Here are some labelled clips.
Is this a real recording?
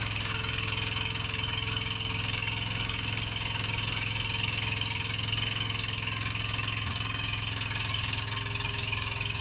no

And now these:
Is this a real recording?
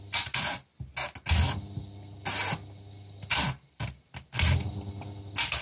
yes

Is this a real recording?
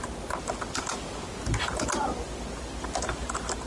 yes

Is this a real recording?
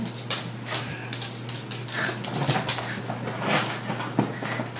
yes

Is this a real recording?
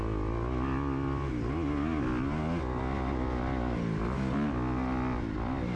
yes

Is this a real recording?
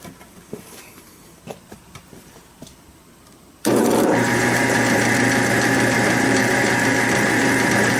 no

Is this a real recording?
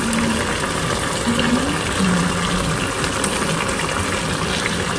yes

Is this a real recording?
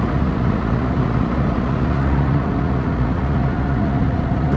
no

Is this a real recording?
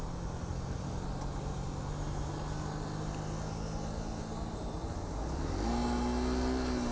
yes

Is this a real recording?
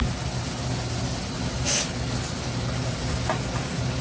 yes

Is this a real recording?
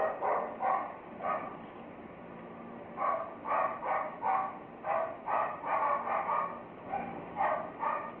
yes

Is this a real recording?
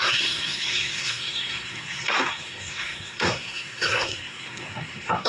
no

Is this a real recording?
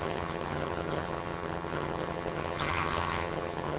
no